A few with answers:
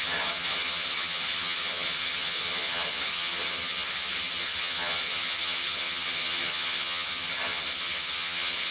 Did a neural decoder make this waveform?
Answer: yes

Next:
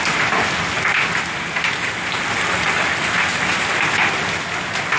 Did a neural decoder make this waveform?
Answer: no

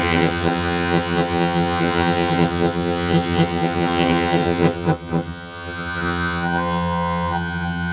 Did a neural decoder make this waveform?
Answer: yes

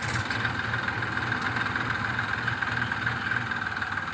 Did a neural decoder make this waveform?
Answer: no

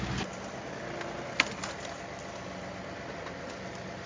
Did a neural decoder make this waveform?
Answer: no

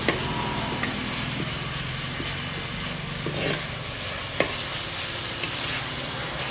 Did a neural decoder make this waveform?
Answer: no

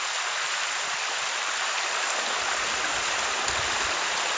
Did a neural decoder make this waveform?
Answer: no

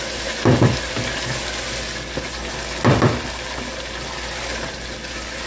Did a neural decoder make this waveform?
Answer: no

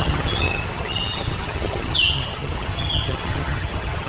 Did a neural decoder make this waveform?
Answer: yes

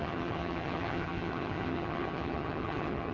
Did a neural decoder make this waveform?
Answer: yes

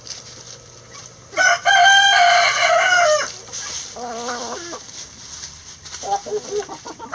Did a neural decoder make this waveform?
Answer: no